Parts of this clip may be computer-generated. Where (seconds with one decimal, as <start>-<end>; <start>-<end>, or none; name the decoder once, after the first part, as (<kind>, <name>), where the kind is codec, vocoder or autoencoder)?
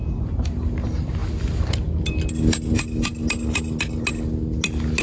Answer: none